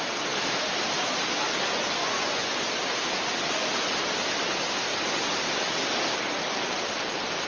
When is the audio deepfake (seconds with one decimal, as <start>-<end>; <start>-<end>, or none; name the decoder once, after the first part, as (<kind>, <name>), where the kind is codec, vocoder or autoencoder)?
2.0-2.6 (vocoder, Vocos)

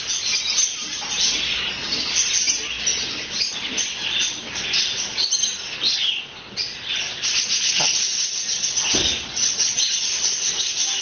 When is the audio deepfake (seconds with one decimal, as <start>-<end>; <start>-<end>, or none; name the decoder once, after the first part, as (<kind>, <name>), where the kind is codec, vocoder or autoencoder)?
none